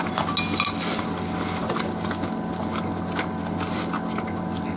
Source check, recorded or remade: recorded